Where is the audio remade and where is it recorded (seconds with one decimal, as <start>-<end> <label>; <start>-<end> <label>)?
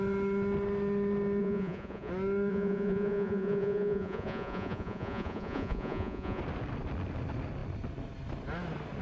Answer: 0.0-1.4 recorded; 1.4-2.1 remade; 2.1-2.5 recorded; 2.5-6.4 remade; 6.4-9.0 recorded